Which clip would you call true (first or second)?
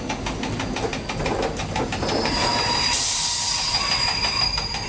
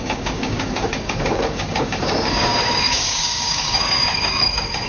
first